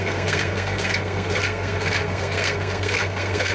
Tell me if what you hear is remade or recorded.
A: remade